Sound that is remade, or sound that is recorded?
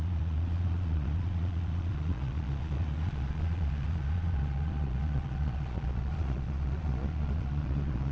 remade